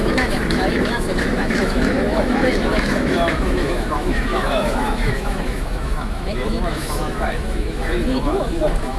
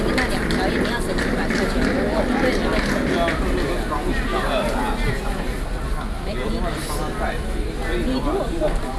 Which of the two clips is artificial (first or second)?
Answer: first